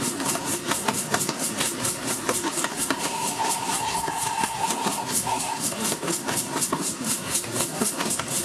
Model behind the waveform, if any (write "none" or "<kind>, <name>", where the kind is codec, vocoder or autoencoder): codec, SNAC